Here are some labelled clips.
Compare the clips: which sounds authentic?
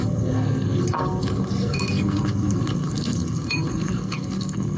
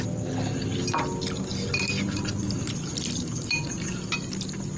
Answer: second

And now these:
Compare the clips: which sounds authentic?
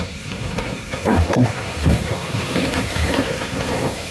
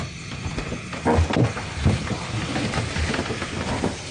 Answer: second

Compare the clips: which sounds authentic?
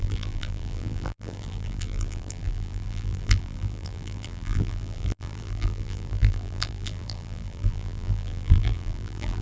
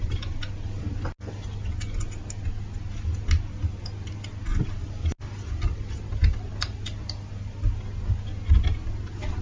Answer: second